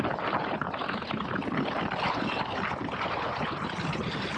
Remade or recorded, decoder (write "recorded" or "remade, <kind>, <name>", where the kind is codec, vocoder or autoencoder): recorded